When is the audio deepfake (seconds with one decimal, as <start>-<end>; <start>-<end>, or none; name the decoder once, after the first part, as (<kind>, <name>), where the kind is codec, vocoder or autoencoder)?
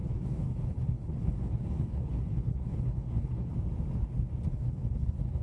0.0-3.5 (codec, HILCodec); 4.5-5.4